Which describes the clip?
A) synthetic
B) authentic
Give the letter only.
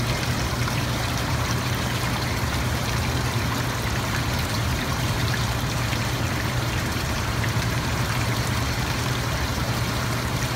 A